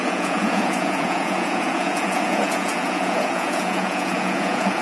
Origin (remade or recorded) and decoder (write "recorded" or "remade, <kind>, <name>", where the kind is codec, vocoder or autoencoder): remade, vocoder, Vocos